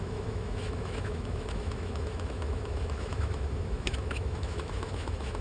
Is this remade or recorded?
remade